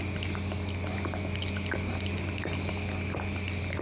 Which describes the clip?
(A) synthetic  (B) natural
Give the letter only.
B